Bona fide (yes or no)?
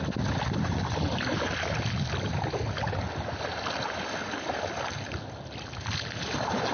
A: yes